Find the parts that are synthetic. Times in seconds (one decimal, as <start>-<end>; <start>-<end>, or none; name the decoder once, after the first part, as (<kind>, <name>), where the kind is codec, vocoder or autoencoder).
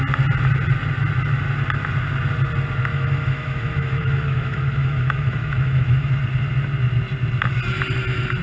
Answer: 2.9-6.1 (autoencoder, DAC-VAE)